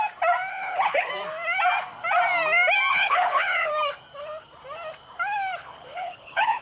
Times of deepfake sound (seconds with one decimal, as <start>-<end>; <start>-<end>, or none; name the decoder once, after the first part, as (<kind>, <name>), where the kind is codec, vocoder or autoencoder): 0.5-1.1 (codec, HILCodec); 2.9-3.7; 5.6-6.6